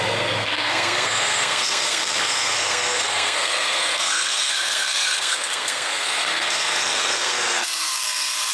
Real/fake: fake